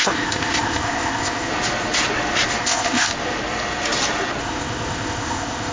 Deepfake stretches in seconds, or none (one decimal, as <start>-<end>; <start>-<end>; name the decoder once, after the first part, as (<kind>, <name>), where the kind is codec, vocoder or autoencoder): 0.0-1.5 (codec, ZipCodec); 2.6-3.1; 4.4-5.7